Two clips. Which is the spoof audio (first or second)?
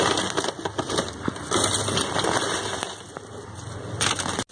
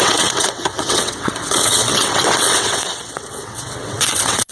second